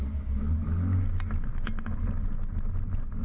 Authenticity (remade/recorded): recorded